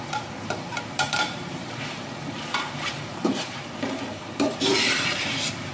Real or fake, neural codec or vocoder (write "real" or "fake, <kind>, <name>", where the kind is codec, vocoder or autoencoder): fake, vocoder, BigVGAN v2